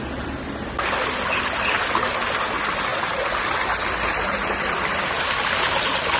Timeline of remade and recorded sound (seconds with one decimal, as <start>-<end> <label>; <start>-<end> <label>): 0.0-6.2 recorded